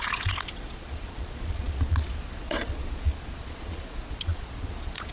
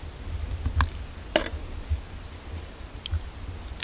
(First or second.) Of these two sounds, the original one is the second